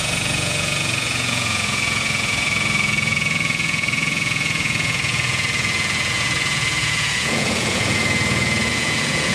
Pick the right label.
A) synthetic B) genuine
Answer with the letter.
A